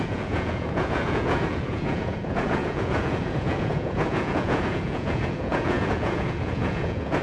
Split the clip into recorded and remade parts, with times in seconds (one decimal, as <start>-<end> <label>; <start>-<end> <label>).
0.0-7.2 remade